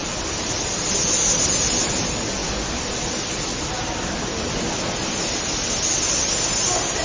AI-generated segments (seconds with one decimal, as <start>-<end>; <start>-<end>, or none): none

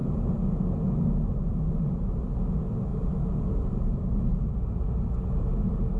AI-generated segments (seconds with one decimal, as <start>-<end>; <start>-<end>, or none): 0.0-0.6; 1.3-1.9; 2.9-4.3

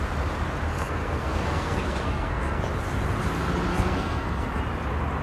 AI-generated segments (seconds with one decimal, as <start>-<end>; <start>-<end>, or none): 0.7-2.6; 3.7-4.6

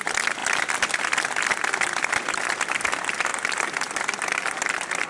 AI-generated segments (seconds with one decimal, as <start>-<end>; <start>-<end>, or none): none